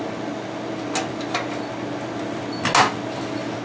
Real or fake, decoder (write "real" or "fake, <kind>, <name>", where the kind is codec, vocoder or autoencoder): real